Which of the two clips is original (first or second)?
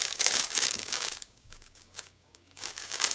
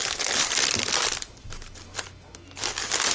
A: second